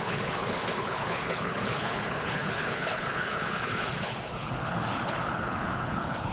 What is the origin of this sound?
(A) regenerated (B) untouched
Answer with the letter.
A